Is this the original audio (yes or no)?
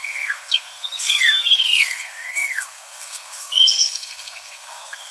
no